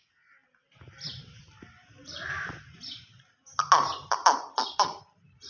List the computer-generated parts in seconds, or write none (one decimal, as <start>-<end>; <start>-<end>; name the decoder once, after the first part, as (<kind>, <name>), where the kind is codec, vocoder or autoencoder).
0.4-2.6 (vocoder, BigVGAN v2); 4.0-5.5